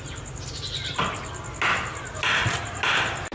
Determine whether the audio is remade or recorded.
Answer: recorded